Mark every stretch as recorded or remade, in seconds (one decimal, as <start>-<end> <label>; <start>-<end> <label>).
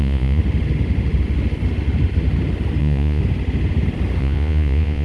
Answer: 0.0-0.4 remade; 0.4-2.8 recorded; 2.8-3.2 remade; 3.2-4.2 recorded; 4.2-5.0 remade